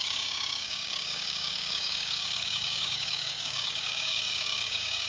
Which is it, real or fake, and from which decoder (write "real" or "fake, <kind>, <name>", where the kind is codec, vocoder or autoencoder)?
fake, codec, DAC